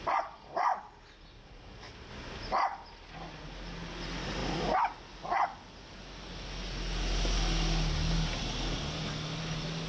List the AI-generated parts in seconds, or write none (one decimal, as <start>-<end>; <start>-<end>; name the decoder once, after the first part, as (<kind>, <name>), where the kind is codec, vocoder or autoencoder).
none